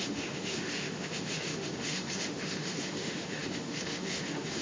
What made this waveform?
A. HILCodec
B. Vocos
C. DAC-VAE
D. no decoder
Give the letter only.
C